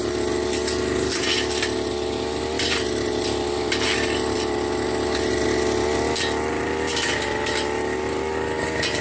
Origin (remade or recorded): recorded